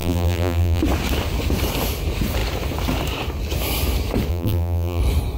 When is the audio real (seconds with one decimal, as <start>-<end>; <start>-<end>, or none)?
0.8-4.3; 5.0-5.4